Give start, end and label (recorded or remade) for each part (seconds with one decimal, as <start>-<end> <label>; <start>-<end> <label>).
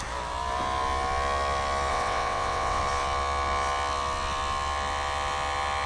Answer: 0.0-1.9 recorded; 1.9-2.8 remade; 2.8-5.9 recorded